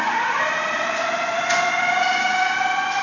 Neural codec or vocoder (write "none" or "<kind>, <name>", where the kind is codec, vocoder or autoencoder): none